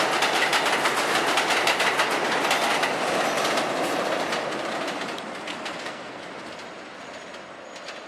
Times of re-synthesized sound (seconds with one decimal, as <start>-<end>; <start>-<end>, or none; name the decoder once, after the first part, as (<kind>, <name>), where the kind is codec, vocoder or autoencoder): 5.5-6.2 (codec, SNAC)